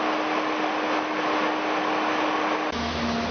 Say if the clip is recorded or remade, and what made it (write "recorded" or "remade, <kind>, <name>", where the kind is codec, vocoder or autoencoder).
recorded